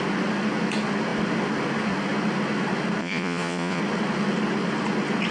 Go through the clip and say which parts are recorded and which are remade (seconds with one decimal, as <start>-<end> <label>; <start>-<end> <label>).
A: 0.0-3.0 recorded; 3.0-3.8 remade; 3.8-5.3 recorded